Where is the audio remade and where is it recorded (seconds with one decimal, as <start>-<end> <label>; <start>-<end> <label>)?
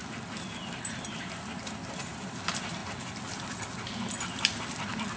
0.0-5.2 recorded